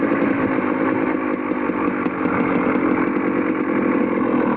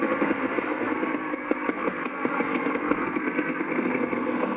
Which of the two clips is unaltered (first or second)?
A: first